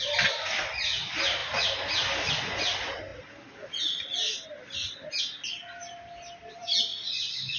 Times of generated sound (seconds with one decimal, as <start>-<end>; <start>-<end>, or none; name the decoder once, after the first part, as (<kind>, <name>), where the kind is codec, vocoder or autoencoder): none